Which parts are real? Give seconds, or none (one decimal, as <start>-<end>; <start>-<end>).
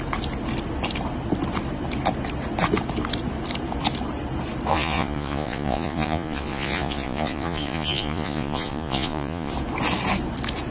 0.0-4.7; 9.5-10.7